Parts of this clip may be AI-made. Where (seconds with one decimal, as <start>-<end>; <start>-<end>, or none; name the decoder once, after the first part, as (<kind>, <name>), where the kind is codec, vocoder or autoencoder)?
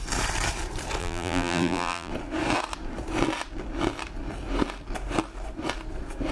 1.0-2.1 (vocoder, BigVGAN v2)